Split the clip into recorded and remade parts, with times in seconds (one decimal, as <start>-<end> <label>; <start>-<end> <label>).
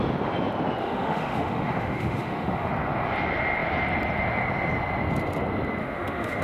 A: 0.0-0.8 recorded; 0.8-2.7 remade; 2.7-5.8 recorded; 5.8-6.4 remade